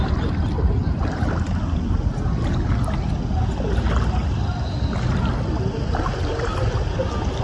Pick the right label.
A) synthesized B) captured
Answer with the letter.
B